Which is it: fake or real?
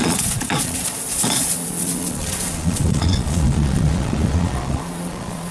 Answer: fake